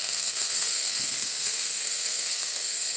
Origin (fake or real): fake